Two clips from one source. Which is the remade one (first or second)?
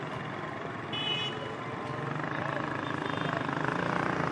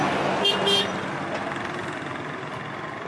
first